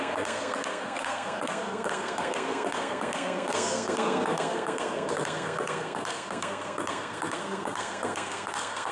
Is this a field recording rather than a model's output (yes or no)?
no